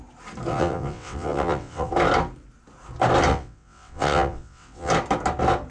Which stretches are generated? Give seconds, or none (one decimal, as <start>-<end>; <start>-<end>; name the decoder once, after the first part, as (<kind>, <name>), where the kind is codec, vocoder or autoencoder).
0.5-1.9 (vocoder, WaveNeXt); 3.3-4.9